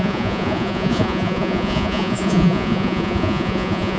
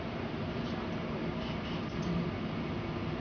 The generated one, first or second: first